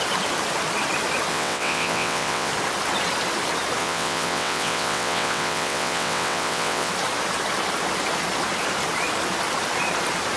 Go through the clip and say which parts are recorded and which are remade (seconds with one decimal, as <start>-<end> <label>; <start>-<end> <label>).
0.0-1.3 recorded; 1.3-2.5 remade; 2.5-3.8 recorded; 3.8-6.9 remade; 6.9-10.4 recorded